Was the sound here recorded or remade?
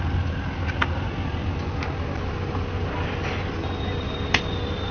recorded